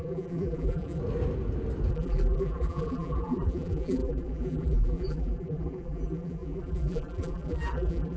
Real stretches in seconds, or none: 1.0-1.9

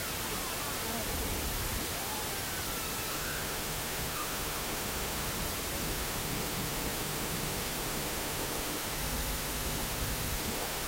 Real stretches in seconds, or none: 0.0-3.1; 5.3-5.8